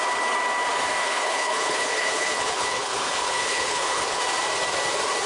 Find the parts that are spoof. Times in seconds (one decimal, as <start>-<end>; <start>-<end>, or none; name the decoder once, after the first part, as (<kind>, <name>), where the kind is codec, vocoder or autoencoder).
1.0-4.2 (codec, HILCodec)